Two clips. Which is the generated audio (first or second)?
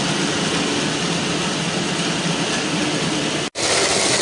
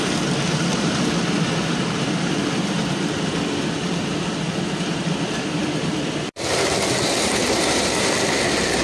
second